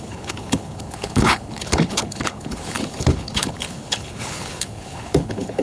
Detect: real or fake fake